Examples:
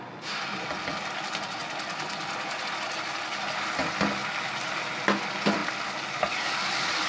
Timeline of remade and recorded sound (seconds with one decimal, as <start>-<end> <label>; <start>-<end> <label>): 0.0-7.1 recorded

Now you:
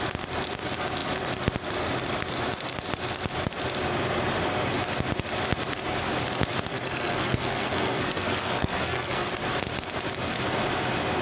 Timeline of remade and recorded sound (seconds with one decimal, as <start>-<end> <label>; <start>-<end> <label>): 0.0-6.7 recorded; 6.7-9.3 remade; 9.3-11.2 recorded

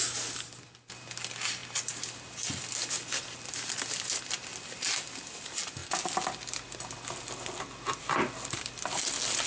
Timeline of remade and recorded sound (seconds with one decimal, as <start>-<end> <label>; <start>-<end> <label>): 0.0-9.5 recorded

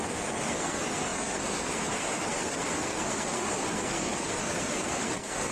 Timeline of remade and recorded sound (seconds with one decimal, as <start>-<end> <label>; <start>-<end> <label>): 0.0-5.5 remade